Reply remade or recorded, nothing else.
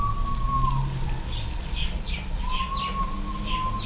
recorded